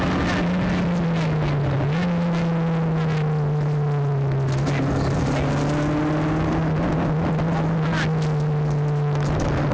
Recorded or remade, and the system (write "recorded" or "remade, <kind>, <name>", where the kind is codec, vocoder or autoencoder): recorded